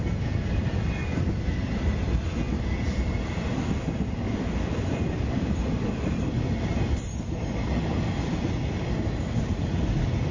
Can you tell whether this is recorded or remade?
remade